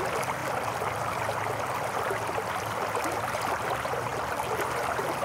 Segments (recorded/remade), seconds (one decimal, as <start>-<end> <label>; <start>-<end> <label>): 0.0-5.2 recorded

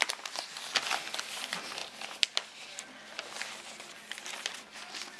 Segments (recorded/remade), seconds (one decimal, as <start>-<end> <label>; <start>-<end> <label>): 0.0-5.2 recorded

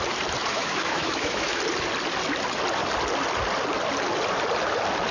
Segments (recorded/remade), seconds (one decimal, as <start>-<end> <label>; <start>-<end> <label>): 0.0-0.5 recorded; 0.5-1.6 remade; 1.6-5.1 recorded

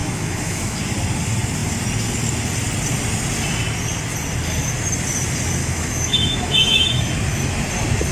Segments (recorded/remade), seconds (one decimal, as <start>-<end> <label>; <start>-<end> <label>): 0.0-0.8 remade; 0.8-5.6 recorded; 5.6-7.1 remade; 7.1-8.1 recorded

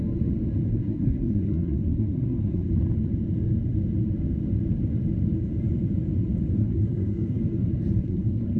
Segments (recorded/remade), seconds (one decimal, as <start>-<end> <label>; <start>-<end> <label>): 0.0-0.7 recorded; 0.7-2.7 remade; 2.7-6.6 recorded; 6.6-7.4 remade; 7.4-8.0 recorded; 8.0-8.6 remade